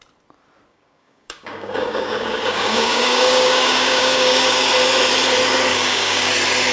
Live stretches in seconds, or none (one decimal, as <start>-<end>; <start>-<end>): 0.0-0.7; 4.7-5.7; 6.3-6.7